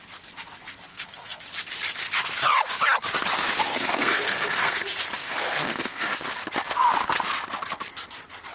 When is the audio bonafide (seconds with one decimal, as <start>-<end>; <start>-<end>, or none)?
0.0-0.9; 1.4-3.7; 4.8-5.2; 6.1-8.5